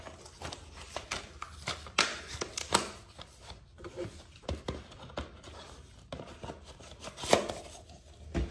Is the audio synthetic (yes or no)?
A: no